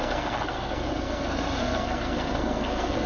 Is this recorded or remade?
remade